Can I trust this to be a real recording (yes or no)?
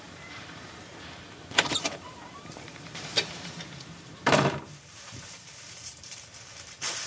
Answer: no